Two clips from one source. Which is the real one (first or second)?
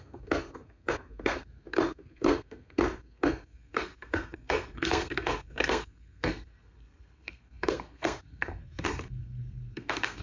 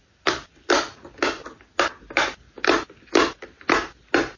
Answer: second